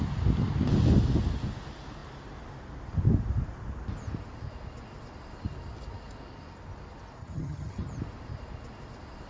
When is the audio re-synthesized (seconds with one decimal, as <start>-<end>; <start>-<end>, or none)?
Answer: 7.2-8.0